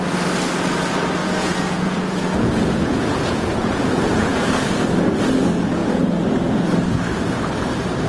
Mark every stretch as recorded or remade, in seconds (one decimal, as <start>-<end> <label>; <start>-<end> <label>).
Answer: 0.0-1.2 recorded; 1.2-4.4 remade; 4.4-8.1 recorded